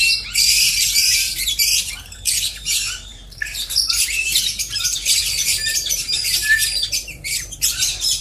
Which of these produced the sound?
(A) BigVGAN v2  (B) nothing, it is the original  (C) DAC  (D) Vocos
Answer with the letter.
A